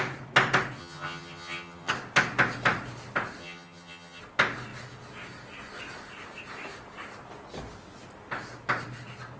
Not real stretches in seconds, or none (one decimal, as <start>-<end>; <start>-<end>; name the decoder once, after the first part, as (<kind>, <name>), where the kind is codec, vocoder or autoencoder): 0.8-1.9 (vocoder, HiFi-GAN); 3.4-4.2